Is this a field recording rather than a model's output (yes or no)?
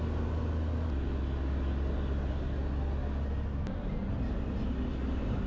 yes